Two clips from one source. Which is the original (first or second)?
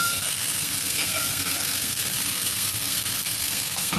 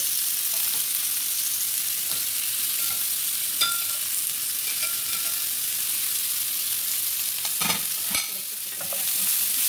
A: second